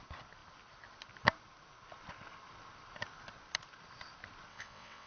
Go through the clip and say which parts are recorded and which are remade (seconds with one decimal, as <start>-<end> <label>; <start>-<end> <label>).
0.0-4.5 recorded; 4.5-5.1 remade